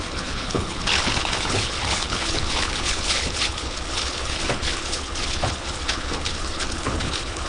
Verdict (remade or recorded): remade